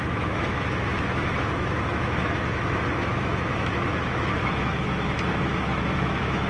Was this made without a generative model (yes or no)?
no